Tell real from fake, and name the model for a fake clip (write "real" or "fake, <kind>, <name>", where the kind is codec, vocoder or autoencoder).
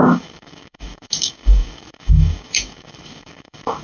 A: fake, codec, DAC